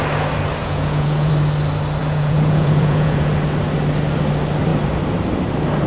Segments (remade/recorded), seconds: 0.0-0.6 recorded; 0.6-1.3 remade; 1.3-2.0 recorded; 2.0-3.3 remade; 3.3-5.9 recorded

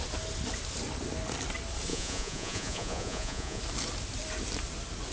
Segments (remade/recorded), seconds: 0.0-1.9 recorded; 1.9-3.6 remade; 3.6-5.1 recorded